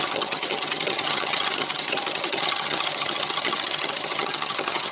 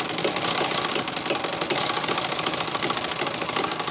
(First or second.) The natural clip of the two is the second